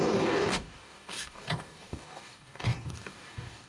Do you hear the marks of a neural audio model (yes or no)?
yes